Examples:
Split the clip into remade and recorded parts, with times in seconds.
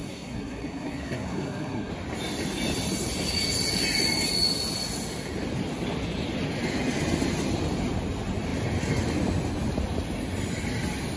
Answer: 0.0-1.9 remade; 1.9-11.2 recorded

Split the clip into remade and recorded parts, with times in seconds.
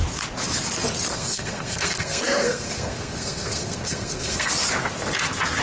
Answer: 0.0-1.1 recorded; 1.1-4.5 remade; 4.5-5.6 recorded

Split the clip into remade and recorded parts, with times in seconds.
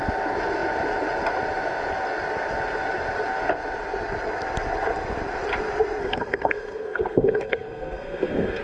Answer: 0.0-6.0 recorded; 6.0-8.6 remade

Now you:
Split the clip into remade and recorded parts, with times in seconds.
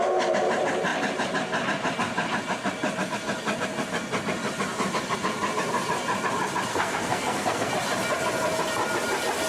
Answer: 0.0-6.7 recorded; 6.7-7.7 remade; 7.7-9.5 recorded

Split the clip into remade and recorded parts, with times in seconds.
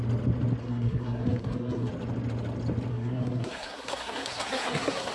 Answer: 0.0-0.6 recorded; 0.6-1.9 remade; 1.9-2.9 recorded; 2.9-5.1 remade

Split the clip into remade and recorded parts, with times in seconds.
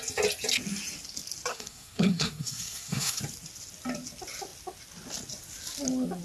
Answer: 0.0-1.5 recorded; 1.5-3.2 remade; 3.2-6.2 recorded